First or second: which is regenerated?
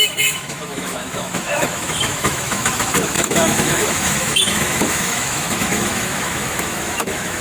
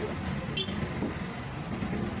first